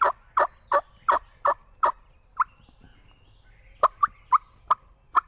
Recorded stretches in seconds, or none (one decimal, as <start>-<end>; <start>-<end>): 0.0-5.3